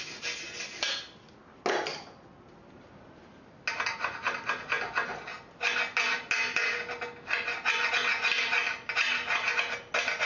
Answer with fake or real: real